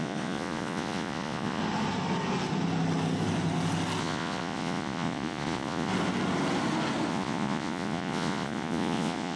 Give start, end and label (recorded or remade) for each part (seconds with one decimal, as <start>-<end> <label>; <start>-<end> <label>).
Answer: 0.0-1.6 remade; 1.6-4.0 recorded; 4.0-5.9 remade; 5.9-7.1 recorded; 7.1-9.4 remade